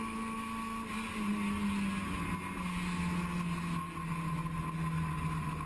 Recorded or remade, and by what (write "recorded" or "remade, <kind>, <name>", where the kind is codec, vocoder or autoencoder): recorded